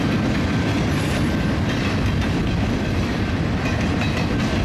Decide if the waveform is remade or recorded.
recorded